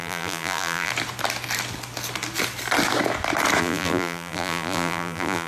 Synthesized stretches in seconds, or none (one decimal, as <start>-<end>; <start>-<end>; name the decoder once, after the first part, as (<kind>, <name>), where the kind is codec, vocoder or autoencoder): 0.0-0.9 (vocoder, BigVGAN v2); 3.6-5.5